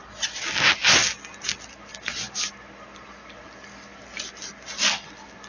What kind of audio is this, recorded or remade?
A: recorded